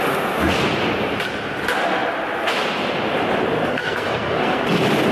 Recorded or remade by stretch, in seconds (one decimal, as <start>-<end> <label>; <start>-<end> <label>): 0.0-3.7 recorded; 3.7-4.6 remade; 4.6-5.1 recorded